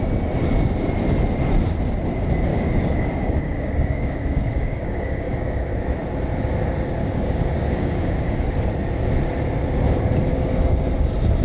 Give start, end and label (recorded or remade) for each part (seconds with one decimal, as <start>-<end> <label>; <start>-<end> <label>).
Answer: 0.0-2.5 recorded; 2.5-5.6 remade; 5.6-7.0 recorded; 7.0-8.5 remade; 8.5-10.3 recorded; 10.3-10.9 remade; 10.9-11.4 recorded